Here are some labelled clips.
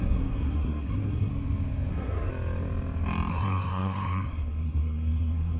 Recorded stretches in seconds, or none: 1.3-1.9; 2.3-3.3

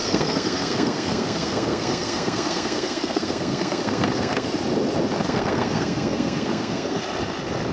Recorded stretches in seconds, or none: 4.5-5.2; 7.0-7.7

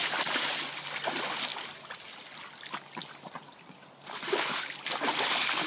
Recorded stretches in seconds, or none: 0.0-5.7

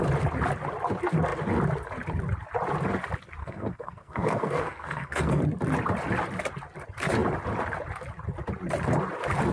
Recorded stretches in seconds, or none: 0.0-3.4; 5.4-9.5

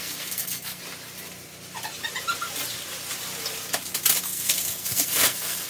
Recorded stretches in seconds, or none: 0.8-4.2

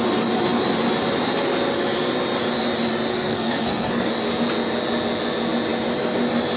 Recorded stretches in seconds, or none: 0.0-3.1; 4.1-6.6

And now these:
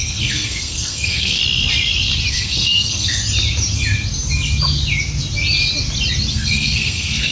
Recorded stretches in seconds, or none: 1.4-2.3; 3.2-6.3